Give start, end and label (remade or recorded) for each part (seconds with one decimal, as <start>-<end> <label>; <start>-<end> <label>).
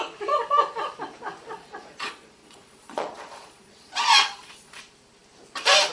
0.0-1.5 recorded; 1.5-4.8 remade; 4.8-5.9 recorded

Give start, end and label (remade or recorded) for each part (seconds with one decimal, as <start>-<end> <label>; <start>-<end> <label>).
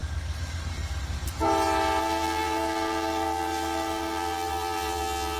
0.0-2.0 recorded; 2.0-5.4 remade